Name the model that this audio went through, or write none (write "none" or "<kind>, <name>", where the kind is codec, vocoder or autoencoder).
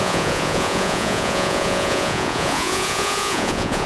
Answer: vocoder, Vocos